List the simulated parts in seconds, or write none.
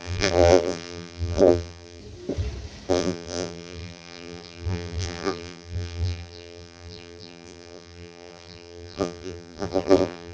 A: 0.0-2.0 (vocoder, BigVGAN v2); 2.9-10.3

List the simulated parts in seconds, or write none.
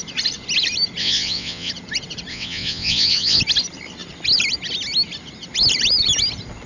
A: 1.0-1.7 (vocoder, WaveNeXt); 2.3-3.4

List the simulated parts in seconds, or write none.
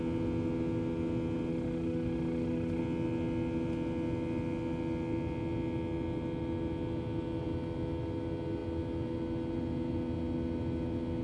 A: 1.5-2.8 (autoencoder, DAC-VAE)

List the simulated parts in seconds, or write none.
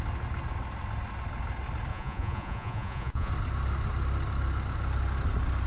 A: 1.9-3.3 (vocoder, Vocos)